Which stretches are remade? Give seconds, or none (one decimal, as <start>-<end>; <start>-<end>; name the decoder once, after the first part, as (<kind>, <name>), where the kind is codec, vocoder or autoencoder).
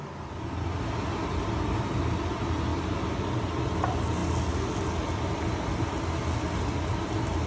none